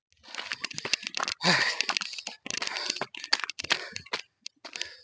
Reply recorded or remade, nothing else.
recorded